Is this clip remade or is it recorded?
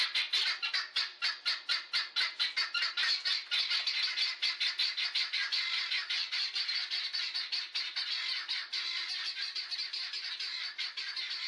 recorded